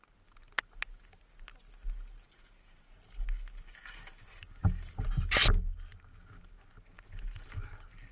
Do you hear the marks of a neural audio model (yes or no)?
no